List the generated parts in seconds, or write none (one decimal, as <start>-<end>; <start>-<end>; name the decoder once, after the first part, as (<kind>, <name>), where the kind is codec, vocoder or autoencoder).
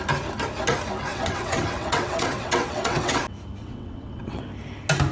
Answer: 1.1-3.2 (vocoder, WaveNeXt); 3.6-4.4